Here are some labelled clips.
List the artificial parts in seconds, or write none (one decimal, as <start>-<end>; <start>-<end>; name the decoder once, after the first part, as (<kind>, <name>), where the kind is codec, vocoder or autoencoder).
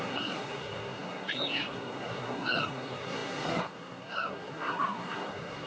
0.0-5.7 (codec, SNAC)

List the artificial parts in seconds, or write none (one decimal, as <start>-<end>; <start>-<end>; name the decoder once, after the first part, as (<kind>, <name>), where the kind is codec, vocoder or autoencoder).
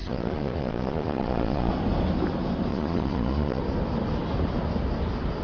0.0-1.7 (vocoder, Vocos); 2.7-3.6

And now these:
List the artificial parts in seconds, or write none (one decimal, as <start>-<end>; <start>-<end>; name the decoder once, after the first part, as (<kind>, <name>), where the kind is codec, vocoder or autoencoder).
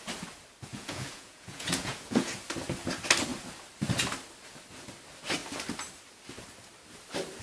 0.7-2.3 (vocoder, Vocos)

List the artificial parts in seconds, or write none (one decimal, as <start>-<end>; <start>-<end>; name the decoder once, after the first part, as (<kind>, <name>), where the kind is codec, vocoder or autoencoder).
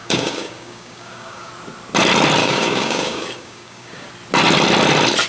0.0-1.5 (codec, DAC); 2.4-4.1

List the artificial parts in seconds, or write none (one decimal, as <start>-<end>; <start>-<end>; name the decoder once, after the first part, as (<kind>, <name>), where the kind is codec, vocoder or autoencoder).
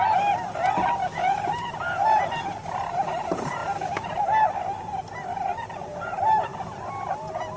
1.0-1.5 (autoencoder, DAC-VAE)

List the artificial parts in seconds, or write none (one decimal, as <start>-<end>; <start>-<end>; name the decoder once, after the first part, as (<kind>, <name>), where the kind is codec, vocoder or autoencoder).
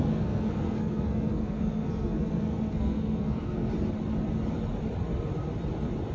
0.0-3.7 (codec, SNAC)